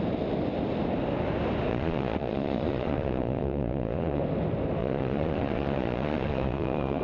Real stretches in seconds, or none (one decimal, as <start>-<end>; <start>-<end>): 0.0-1.7; 4.2-4.8